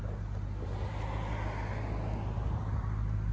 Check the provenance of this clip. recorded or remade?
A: recorded